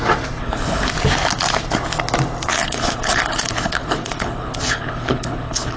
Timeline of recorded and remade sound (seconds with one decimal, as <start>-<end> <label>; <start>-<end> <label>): 0.0-0.4 recorded; 0.4-0.9 remade; 0.9-2.5 recorded; 2.5-5.8 remade